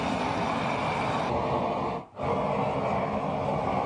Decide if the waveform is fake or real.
real